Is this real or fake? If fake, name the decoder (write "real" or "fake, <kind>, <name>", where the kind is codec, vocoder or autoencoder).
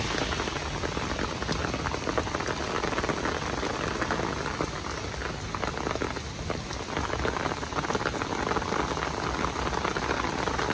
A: real